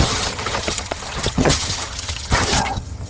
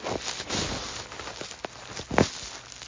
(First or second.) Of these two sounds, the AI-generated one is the first